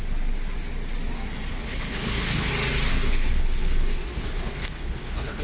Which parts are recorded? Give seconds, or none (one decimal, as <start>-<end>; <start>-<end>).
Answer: 0.0-1.5; 2.5-2.9

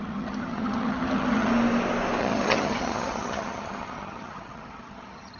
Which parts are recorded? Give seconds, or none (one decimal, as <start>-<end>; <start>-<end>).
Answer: 1.5-2.2